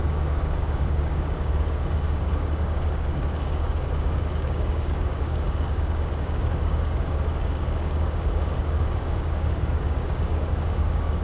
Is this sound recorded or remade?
remade